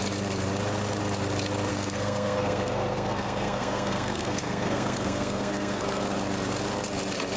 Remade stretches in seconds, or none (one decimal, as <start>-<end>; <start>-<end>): 1.7-6.0